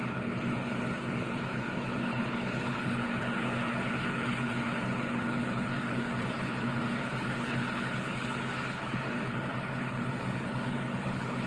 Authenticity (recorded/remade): remade